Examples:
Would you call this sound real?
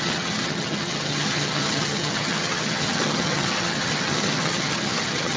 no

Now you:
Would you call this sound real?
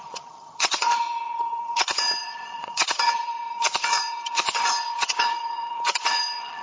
no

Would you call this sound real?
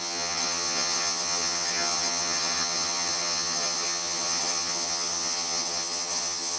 no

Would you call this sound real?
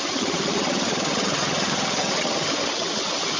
no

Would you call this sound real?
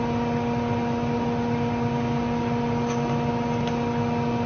yes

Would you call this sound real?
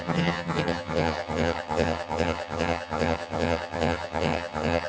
no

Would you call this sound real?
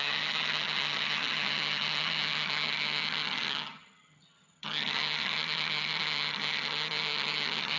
no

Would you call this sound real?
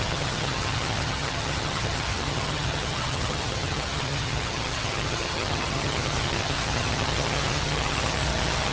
no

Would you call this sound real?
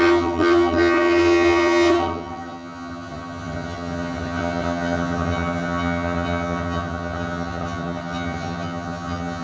no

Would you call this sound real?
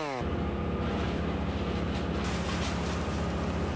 yes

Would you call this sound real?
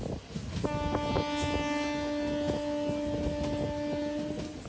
yes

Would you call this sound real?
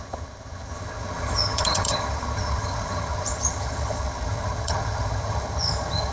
no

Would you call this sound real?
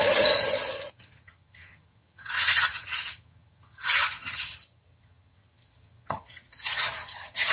no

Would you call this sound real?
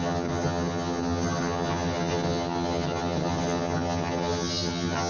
no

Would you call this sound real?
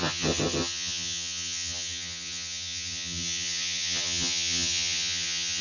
no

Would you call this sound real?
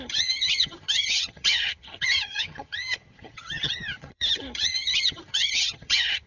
no